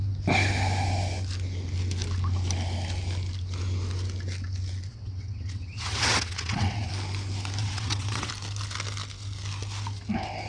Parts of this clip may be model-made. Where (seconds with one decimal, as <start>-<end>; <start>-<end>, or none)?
4.9-6.9; 7.6-8.3